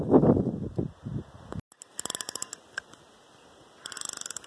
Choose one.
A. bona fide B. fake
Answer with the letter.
A